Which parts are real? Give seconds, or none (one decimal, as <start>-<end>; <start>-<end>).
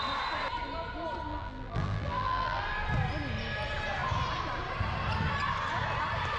0.0-1.3; 2.6-6.4